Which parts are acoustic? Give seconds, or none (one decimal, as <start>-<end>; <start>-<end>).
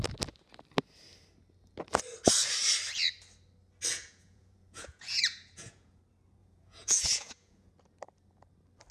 0.0-3.9; 6.0-6.4; 7.7-8.9